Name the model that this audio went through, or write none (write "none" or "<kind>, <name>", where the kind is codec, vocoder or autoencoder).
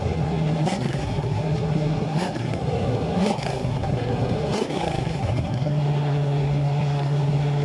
codec, SNAC